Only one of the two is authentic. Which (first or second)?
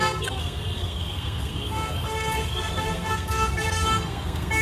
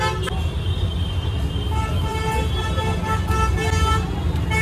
second